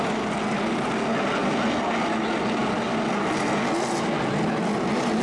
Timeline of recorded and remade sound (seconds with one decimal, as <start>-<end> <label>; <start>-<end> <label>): 0.0-5.2 recorded